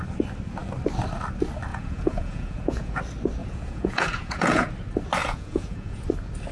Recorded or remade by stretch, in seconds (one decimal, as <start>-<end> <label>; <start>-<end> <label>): 0.0-1.7 recorded; 1.7-3.0 remade; 3.0-3.4 recorded; 3.4-4.7 remade; 4.7-5.2 recorded; 5.2-6.0 remade; 6.0-6.5 recorded